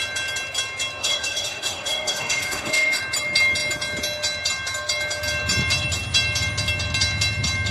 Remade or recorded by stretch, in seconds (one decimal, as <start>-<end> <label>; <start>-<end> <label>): 0.0-1.0 recorded; 1.0-3.0 remade; 3.0-7.7 recorded